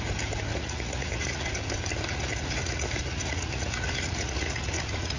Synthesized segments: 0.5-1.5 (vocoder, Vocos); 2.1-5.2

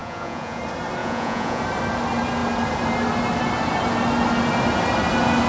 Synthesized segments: 0.0-0.6 (vocoder, Vocos); 1.0-1.6

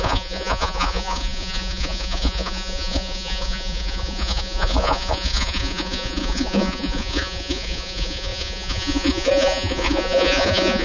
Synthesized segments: 0.0-10.8 (vocoder, Vocos)

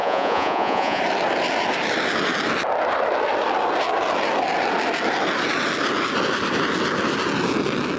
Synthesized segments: 0.0-1.0 (vocoder, Vocos)

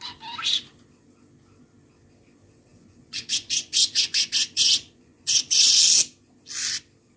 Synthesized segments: 2.7-5.7 (vocoder, Vocos)

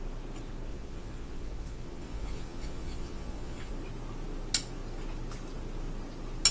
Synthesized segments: 0.7-3.7 (vocoder, Vocos)

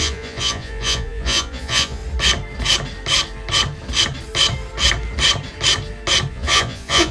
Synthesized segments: 0.0-2.0 (vocoder, Vocos); 6.3-7.1

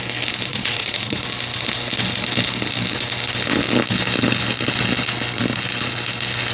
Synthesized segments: 0.5-1.2 (vocoder, Vocos)